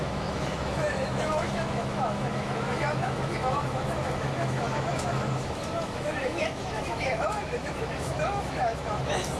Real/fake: fake